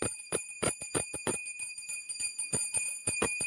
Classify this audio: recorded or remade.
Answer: remade